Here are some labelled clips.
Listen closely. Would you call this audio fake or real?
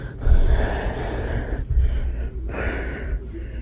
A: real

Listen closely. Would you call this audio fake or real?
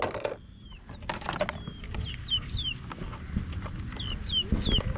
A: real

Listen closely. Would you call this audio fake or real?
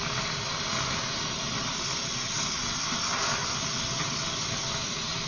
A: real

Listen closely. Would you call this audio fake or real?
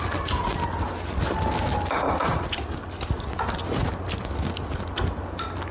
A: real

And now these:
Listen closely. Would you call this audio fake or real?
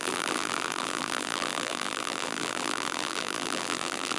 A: fake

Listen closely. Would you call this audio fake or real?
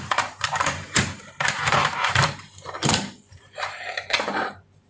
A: fake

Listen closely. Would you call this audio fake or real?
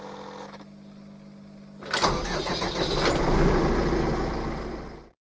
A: real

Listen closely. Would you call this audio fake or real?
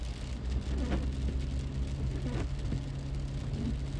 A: real